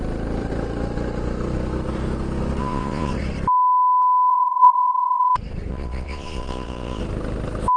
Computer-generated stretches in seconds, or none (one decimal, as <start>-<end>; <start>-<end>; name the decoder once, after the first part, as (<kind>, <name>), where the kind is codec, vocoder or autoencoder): 2.6-3.1 (vocoder, Vocos); 4.3-5.3; 5.7-7.0